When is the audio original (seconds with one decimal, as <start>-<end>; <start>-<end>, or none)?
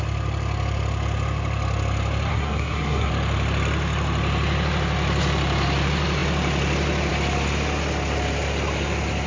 0.0-2.3; 3.1-9.3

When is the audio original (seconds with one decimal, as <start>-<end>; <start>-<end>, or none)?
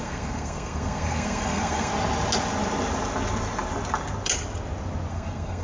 1.9-5.1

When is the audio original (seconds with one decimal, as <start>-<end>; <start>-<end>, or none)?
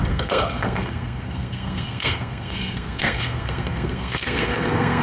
none